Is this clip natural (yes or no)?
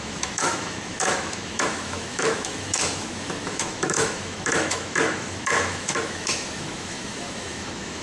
no